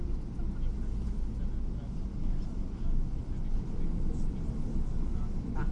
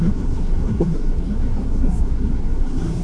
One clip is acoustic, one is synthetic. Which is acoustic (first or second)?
first